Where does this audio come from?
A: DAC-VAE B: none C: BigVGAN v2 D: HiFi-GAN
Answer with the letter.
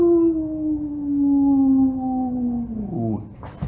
B